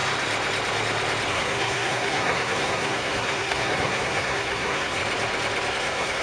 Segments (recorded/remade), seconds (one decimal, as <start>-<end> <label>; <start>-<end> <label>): 0.0-1.3 recorded; 1.3-5.0 remade; 5.0-5.7 recorded; 5.7-6.2 remade